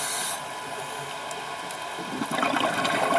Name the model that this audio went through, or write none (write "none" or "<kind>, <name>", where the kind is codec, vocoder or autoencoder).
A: none